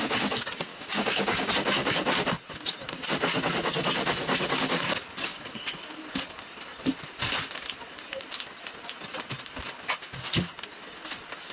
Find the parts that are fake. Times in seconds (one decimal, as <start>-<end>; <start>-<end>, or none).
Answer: 0.7-1.5; 5.3-5.8